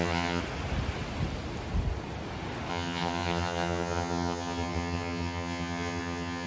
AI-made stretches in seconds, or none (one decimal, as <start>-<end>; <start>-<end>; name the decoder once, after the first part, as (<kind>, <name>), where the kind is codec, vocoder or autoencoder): 0.0-0.4 (vocoder, HiFi-GAN); 2.7-6.5